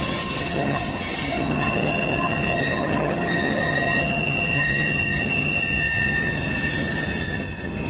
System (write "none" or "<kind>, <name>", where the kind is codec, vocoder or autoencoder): vocoder, HiFi-GAN